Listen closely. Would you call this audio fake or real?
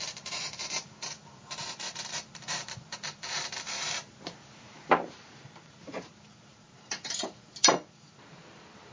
fake